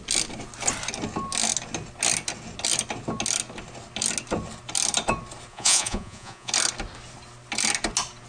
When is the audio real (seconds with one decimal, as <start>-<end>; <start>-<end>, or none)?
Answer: 0.0-5.5; 6.5-8.3